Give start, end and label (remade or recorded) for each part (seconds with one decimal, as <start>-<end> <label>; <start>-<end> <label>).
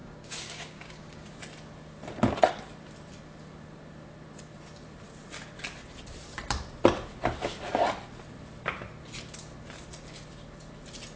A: 0.0-1.3 remade; 1.3-11.2 recorded